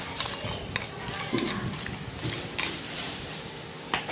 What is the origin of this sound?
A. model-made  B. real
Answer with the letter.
B